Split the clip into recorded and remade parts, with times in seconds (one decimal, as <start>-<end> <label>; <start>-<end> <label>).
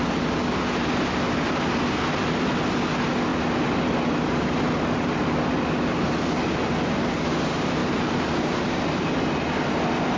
0.0-7.8 recorded; 7.8-9.1 remade; 9.1-10.2 recorded